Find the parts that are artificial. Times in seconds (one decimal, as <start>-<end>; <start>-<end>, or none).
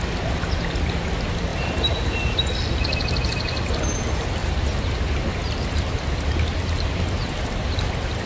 1.5-2.4; 4.4-5.0; 5.4-6.0